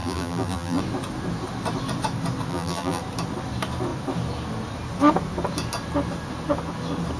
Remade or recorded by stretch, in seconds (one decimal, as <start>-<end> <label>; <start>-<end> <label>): 0.0-0.8 remade; 0.8-2.5 recorded; 2.5-3.0 remade; 3.0-7.2 recorded